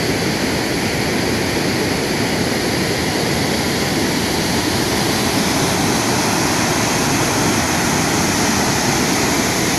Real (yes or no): yes